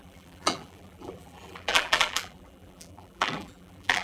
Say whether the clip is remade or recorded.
remade